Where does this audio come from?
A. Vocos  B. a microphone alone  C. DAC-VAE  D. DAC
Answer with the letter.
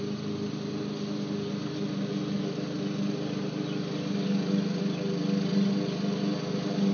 B